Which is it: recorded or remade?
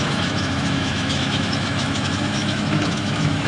remade